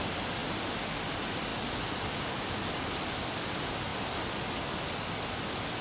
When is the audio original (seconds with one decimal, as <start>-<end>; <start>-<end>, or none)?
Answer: 0.0-0.4; 0.9-5.8